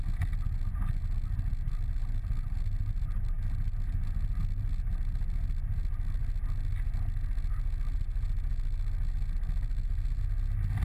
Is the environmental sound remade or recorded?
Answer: recorded